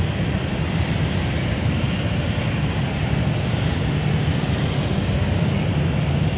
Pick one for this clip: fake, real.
real